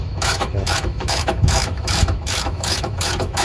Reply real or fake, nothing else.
fake